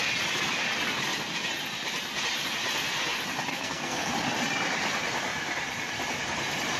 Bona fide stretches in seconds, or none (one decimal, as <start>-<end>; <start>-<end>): 0.0-3.5; 4.1-6.8